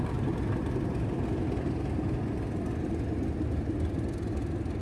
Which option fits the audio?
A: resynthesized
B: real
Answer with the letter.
B